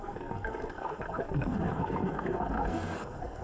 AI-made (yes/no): yes